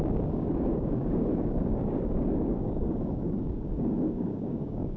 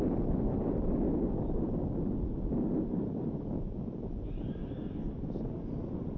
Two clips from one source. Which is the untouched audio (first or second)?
second